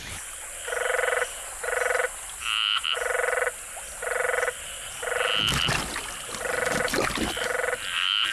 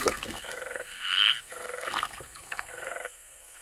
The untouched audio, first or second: first